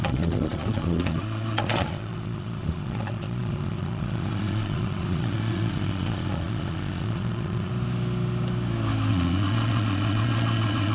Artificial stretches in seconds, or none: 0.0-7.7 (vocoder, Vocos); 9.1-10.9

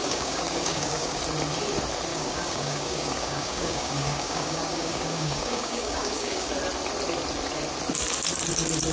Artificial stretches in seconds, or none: 0.0-1.2 (codec, DAC); 2.1-6.5

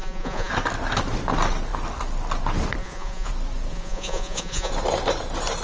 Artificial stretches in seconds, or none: 0.0-0.5 (vocoder, Vocos); 2.8-3.3; 3.7-4.7

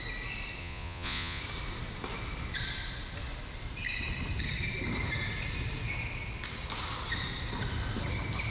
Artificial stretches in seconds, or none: 0.6-1.4 (vocoder, Vocos)

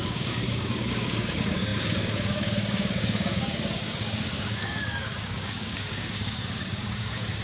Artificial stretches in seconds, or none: 0.0-7.4 (codec, DAC)

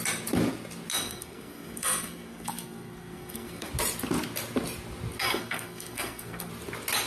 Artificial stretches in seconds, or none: 0.9-3.7 (codec, SNAC); 5.2-6.5

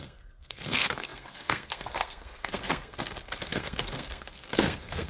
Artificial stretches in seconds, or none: 0.0-5.1 (codec, SNAC)